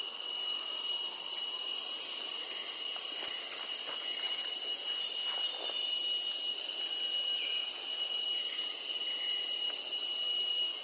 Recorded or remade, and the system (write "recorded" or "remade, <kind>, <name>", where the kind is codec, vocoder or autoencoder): recorded